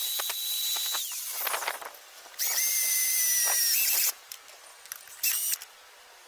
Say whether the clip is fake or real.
real